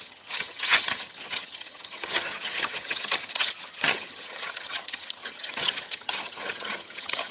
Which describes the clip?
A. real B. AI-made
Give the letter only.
B